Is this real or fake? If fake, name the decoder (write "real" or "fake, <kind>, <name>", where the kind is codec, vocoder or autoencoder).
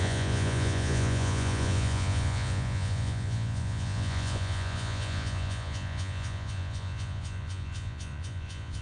fake, vocoder, Vocos